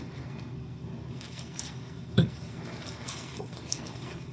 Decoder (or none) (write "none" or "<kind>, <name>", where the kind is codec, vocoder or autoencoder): codec, SNAC